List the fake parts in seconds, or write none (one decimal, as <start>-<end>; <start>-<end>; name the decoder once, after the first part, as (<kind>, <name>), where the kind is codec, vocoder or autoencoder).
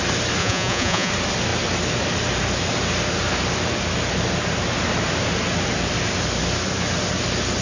0.4-1.1 (vocoder, Vocos)